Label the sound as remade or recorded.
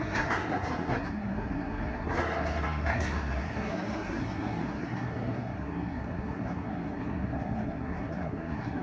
remade